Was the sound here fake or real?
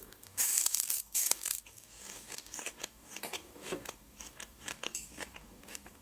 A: fake